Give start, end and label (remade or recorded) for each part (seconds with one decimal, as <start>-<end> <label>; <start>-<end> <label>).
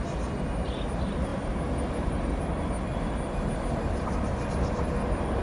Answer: 0.0-5.4 recorded